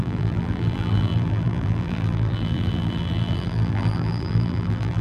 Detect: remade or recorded remade